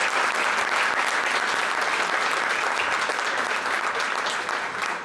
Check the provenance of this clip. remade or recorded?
recorded